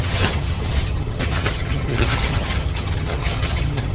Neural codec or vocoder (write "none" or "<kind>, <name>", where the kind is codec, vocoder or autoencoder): vocoder, HiFi-GAN